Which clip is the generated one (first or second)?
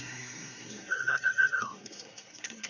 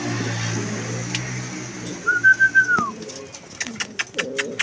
first